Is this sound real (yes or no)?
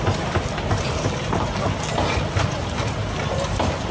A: yes